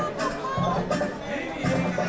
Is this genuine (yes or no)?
yes